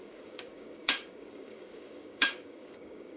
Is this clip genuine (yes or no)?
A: no